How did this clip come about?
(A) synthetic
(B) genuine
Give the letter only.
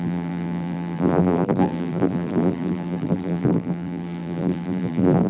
A